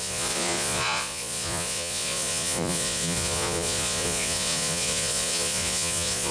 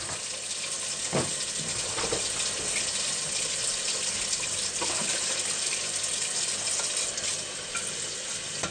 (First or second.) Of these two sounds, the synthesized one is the first